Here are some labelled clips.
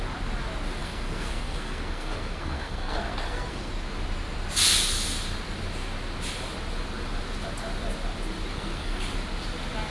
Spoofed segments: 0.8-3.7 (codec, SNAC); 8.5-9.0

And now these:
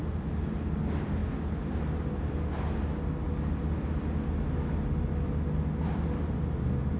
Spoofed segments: none

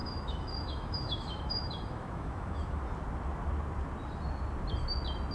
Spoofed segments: 0.0-2.8 (autoencoder, DAC-VAE)

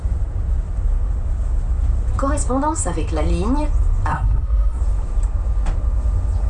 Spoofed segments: 4.1-4.8 (codec, SNAC)